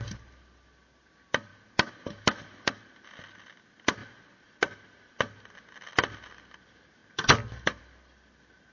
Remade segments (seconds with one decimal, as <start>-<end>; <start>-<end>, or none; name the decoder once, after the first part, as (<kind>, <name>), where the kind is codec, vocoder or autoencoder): 0.0-4.0 (vocoder, BigVGAN v2); 6.4-8.7